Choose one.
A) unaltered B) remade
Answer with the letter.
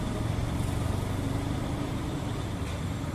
A